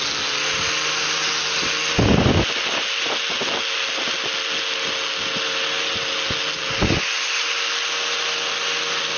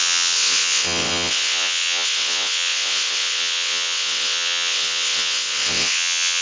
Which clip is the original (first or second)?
first